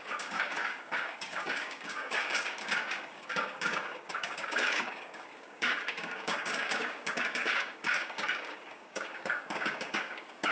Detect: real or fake fake